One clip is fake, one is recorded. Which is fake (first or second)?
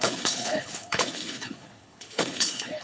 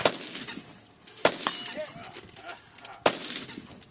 first